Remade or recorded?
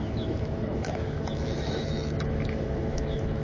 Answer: remade